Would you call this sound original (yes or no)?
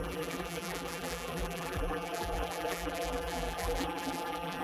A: no